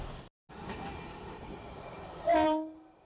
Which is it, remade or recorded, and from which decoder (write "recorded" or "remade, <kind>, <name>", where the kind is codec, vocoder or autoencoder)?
recorded